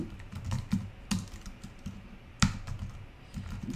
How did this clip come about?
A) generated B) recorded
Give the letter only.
B